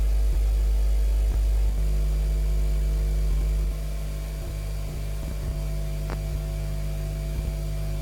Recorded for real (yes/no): yes